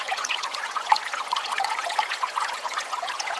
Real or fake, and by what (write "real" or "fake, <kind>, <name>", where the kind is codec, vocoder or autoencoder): fake, vocoder, Vocos